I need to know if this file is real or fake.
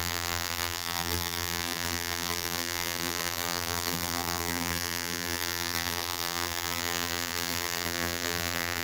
fake